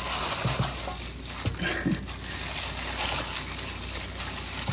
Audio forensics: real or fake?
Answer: real